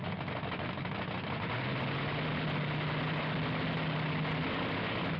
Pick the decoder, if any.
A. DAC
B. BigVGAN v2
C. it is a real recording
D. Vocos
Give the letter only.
C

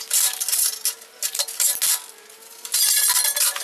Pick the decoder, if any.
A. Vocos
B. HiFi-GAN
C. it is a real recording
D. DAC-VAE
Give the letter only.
C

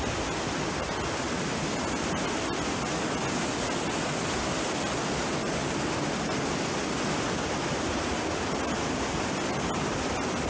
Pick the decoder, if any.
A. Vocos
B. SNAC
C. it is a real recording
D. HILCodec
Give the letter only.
C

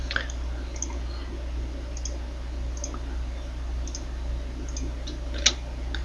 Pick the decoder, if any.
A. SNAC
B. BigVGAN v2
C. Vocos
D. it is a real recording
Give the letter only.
D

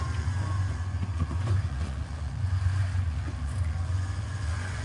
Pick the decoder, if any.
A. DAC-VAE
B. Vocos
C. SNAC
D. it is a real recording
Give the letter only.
B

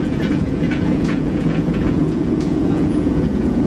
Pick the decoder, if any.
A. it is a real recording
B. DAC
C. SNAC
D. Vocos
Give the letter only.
D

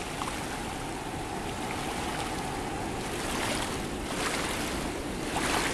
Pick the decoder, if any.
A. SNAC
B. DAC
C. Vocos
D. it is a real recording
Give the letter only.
D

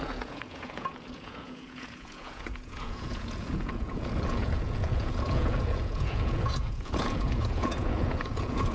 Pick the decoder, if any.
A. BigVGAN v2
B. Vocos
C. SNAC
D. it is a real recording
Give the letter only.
B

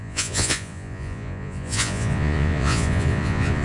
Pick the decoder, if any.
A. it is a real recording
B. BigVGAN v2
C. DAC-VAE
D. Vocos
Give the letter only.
D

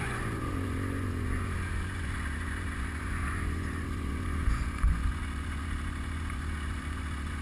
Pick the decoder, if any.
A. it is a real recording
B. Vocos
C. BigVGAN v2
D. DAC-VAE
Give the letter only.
B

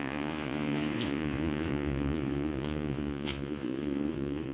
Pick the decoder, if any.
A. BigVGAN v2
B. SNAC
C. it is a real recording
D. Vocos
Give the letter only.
D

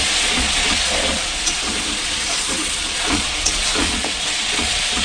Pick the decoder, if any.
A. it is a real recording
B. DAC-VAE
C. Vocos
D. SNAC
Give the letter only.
C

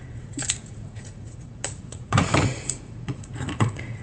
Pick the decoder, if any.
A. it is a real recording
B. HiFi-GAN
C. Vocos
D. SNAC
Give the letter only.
C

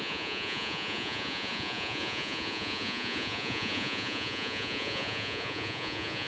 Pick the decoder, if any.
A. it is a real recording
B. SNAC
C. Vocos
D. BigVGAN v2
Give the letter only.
C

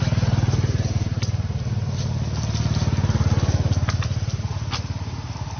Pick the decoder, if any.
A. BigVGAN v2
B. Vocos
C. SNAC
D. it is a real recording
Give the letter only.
D